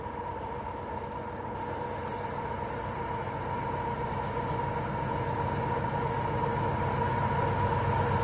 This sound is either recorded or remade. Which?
recorded